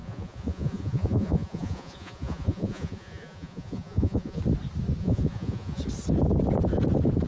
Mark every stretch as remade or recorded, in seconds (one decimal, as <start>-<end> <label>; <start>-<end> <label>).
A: 0.0-4.4 remade; 4.4-5.0 recorded; 5.0-5.8 remade; 5.8-7.3 recorded